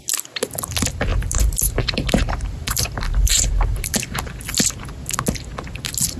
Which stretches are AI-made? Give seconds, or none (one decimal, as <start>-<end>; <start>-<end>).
1.1-4.2